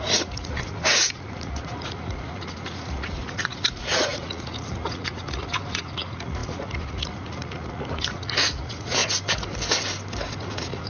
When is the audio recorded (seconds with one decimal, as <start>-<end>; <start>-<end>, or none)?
9.0-10.4